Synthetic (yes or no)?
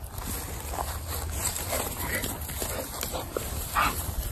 no